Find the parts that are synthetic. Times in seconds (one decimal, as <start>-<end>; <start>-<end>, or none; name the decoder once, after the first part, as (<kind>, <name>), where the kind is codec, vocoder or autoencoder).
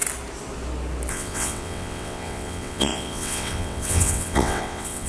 1.1-5.1 (vocoder, WaveNeXt)